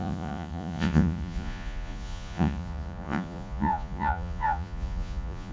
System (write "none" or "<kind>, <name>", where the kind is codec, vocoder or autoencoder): vocoder, Vocos